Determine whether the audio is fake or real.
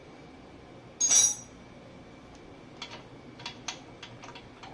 real